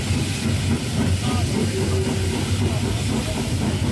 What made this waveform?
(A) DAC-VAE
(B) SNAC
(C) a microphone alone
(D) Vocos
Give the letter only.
C